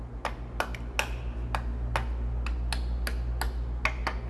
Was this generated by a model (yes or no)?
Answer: no